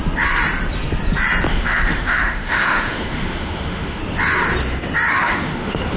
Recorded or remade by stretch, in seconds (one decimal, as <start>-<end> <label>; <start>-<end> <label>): 0.0-1.5 recorded; 1.5-4.0 remade; 4.0-5.2 recorded; 5.2-6.0 remade